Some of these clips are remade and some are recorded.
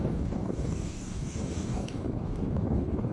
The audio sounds remade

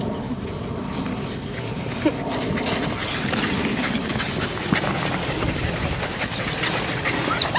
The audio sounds recorded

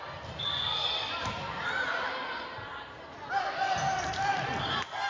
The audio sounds recorded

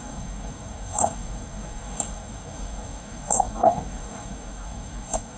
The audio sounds remade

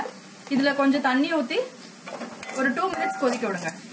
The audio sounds recorded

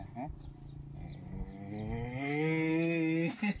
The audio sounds recorded